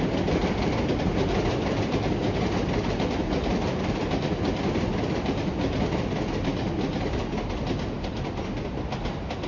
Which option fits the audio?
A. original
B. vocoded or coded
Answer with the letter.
A